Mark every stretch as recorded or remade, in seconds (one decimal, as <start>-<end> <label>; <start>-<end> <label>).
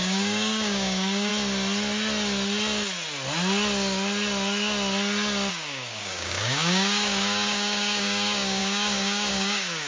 0.0-1.3 remade; 1.3-5.5 recorded; 5.5-9.9 remade